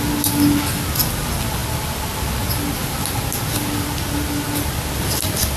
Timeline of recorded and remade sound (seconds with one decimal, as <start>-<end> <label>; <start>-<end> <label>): 0.0-5.6 recorded